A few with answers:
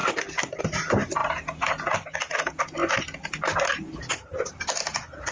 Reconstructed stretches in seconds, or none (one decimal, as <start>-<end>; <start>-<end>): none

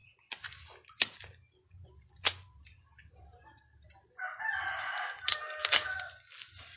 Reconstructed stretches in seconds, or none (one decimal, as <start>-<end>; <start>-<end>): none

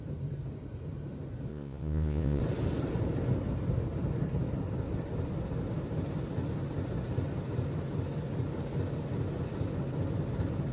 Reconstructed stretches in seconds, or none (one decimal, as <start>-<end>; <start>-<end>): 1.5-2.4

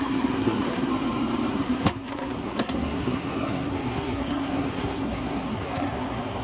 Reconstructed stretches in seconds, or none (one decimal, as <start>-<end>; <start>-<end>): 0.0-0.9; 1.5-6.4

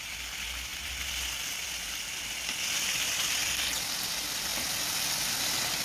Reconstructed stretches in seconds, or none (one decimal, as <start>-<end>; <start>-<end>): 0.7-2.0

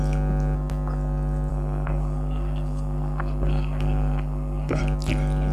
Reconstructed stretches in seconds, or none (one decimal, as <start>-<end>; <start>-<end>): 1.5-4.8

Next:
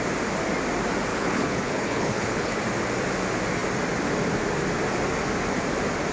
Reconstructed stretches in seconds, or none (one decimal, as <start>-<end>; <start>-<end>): 1.1-2.6